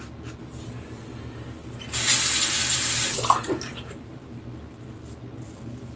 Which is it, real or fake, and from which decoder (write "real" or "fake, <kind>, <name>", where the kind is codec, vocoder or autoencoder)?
real